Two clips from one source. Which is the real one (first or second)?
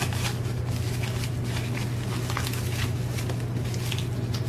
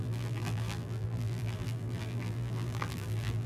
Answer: first